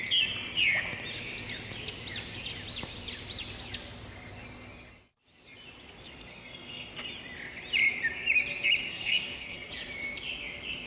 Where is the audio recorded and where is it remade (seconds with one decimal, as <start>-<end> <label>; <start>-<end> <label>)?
0.0-6.3 recorded; 6.3-6.9 remade; 6.9-8.9 recorded; 8.9-9.7 remade; 9.7-10.9 recorded